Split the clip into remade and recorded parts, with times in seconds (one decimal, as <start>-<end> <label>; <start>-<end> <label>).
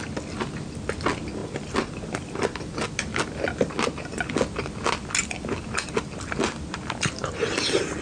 0.0-8.0 recorded